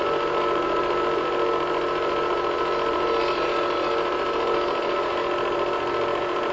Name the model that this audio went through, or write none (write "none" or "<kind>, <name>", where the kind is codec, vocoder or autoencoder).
none